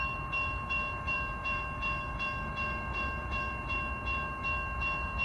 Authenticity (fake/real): fake